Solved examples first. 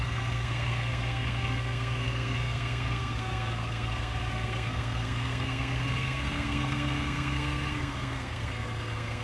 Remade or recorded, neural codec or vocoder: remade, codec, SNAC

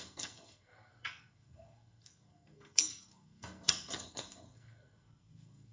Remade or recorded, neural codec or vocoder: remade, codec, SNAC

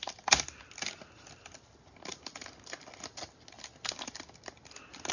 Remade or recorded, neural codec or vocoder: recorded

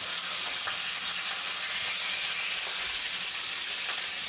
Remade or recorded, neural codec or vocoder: recorded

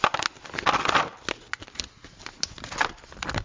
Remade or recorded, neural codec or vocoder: recorded